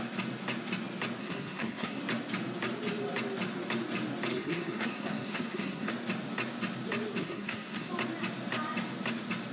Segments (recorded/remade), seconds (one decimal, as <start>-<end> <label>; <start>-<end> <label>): 0.0-1.2 recorded; 1.2-2.0 remade; 2.0-4.3 recorded; 4.3-5.9 remade; 5.9-7.2 recorded; 7.2-7.9 remade; 7.9-9.5 recorded